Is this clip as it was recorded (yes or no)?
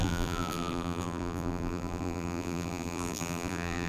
no